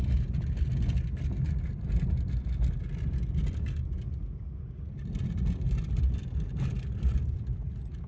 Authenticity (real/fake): real